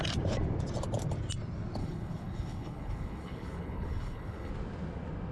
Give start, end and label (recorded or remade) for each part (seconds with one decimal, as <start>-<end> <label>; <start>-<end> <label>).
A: 0.0-1.8 recorded; 1.8-4.5 remade; 4.5-5.3 recorded